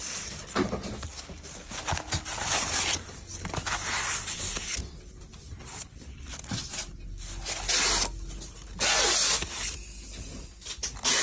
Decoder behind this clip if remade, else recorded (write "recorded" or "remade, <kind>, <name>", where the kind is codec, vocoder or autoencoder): recorded